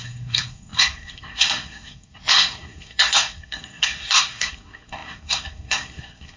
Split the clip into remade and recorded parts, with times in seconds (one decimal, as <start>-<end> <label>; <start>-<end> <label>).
0.0-6.4 remade